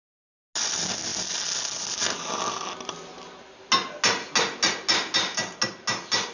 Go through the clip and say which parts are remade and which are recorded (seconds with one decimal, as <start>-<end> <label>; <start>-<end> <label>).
0.0-6.3 recorded